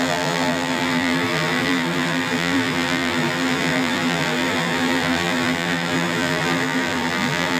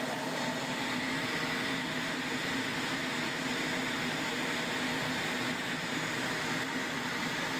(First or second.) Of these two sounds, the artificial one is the first